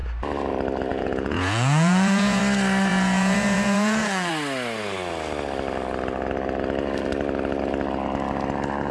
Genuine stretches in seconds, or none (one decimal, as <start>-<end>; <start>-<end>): 0.0-0.9; 2.4-2.9; 4.3-8.9